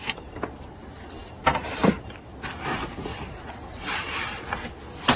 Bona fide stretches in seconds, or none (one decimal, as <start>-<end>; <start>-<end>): 0.0-1.5; 2.4-3.1; 4.5-5.2

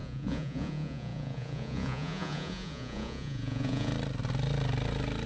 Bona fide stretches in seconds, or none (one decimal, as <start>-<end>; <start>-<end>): 3.9-5.3

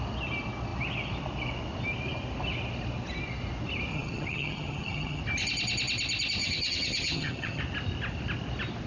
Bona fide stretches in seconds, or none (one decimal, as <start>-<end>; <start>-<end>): 0.0-3.9; 5.2-6.4; 7.6-8.9

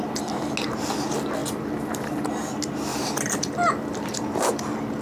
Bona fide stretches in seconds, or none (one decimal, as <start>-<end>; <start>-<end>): 0.0-1.4; 2.4-2.9; 4.5-5.0

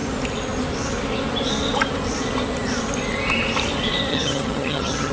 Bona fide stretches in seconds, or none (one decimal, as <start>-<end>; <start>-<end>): 0.0-4.1

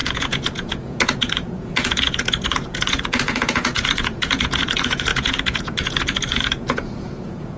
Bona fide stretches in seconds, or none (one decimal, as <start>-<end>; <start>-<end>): none

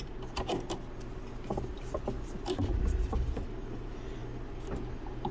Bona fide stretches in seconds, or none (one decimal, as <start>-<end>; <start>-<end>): 0.5-1.7; 4.2-5.3